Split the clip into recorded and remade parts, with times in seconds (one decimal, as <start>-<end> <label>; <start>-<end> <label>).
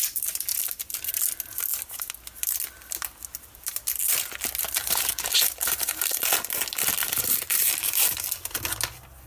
0.0-4.8 recorded; 4.8-6.3 remade; 6.3-7.0 recorded; 7.0-7.7 remade; 7.7-9.3 recorded